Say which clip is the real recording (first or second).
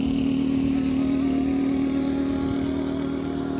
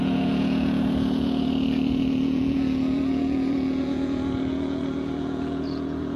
first